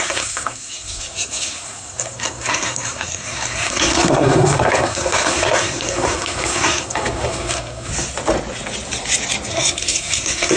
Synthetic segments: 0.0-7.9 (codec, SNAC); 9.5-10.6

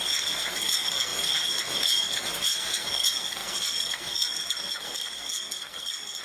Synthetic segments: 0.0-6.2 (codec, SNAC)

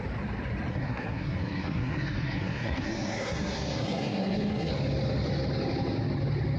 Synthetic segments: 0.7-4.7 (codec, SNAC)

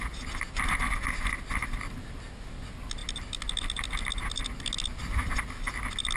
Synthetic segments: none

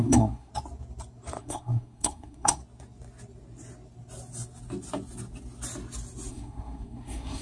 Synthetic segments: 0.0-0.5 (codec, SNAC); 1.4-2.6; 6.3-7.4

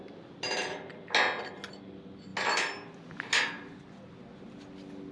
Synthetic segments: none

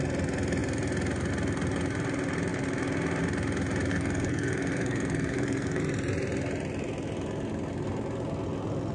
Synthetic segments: 3.9-5.8 (codec, SNAC)